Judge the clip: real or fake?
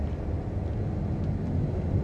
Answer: real